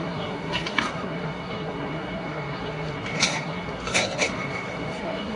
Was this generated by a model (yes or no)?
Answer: yes